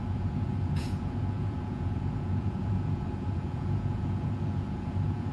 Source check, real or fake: fake